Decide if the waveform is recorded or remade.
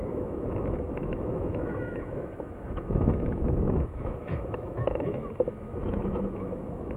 remade